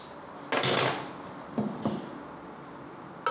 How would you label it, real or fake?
real